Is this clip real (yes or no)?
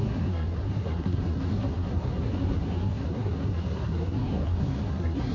no